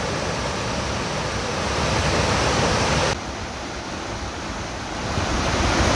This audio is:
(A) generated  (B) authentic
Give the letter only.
B